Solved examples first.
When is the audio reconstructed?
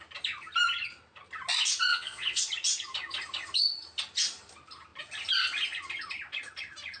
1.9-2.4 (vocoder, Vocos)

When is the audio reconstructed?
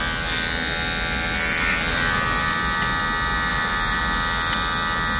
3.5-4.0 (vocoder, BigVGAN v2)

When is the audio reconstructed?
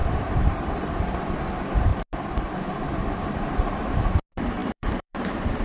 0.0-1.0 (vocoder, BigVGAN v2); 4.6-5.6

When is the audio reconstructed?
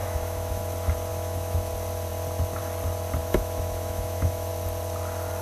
0.0-0.6 (autoencoder, DAC-VAE); 1.1-1.7; 3.2-4.5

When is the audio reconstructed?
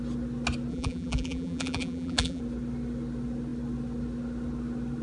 0.7-2.4 (vocoder, BigVGAN v2)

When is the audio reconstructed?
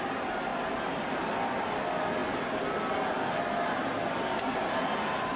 none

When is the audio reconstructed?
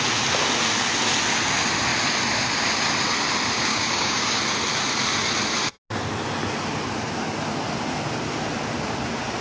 3.7-4.4 (codec, DAC)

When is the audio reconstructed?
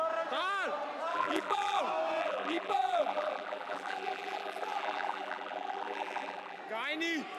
1.1-1.8 (vocoder, BigVGAN v2); 2.2-6.6